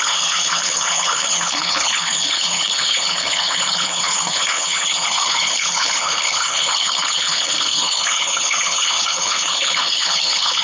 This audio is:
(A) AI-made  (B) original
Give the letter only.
A